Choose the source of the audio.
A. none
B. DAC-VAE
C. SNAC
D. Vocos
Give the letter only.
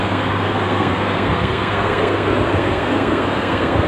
C